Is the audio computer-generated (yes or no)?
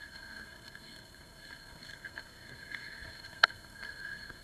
yes